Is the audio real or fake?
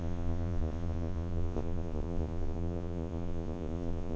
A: fake